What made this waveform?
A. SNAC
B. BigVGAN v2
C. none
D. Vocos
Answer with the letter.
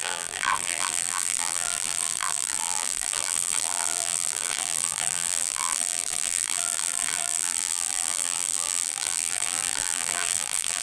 B